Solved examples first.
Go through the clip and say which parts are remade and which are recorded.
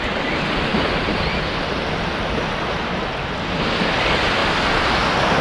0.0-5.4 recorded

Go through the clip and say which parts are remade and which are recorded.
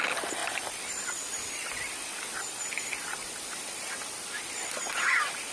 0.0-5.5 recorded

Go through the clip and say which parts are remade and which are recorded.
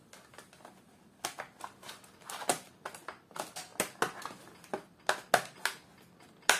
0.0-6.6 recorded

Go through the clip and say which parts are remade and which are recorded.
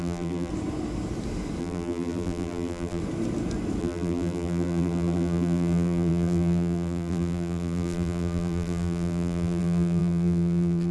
0.0-0.5 remade; 0.5-1.6 recorded; 1.6-3.0 remade; 3.0-3.8 recorded; 3.8-10.9 remade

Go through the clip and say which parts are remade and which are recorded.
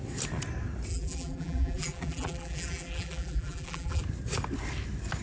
0.0-0.9 recorded; 0.9-4.0 remade; 4.0-5.2 recorded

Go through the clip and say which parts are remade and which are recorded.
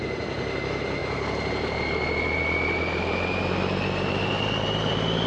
0.0-5.3 remade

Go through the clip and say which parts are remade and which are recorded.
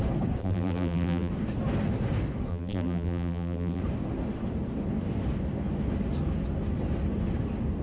0.0-0.4 recorded; 0.4-1.3 remade; 1.3-2.5 recorded; 2.5-3.8 remade; 3.8-7.8 recorded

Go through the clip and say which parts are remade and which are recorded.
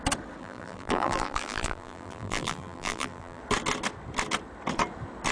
0.0-0.4 recorded; 0.4-3.4 remade; 3.4-5.3 recorded